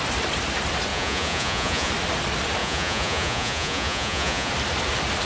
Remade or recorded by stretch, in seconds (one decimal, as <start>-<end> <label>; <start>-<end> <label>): 0.0-0.9 recorded; 0.9-1.9 remade; 1.9-2.6 recorded; 2.6-4.5 remade; 4.5-5.3 recorded